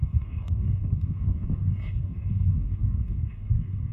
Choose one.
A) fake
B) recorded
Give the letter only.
A